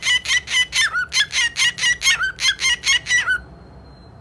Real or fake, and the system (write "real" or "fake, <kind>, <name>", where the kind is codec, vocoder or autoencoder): real